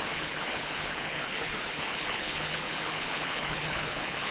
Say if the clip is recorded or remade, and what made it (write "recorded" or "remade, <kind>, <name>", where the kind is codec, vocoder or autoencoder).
remade, codec, HILCodec